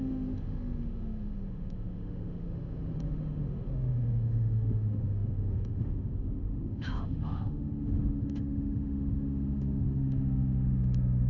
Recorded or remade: remade